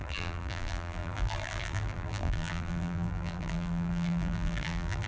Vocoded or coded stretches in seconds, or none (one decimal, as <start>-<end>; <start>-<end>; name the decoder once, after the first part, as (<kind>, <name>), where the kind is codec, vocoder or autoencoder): 0.0-5.1 (vocoder, BigVGAN v2)